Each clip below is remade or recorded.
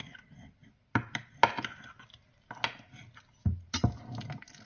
recorded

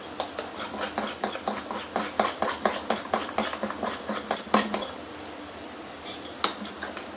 recorded